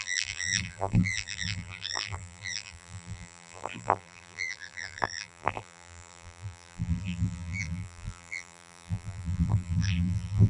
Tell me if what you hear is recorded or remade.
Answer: remade